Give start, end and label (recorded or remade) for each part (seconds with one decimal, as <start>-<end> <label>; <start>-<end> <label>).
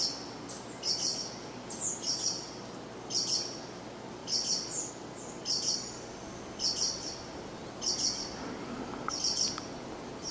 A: 0.0-10.3 recorded